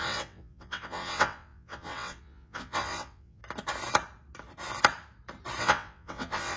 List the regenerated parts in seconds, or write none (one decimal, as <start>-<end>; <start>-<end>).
0.0-3.4; 5.6-6.6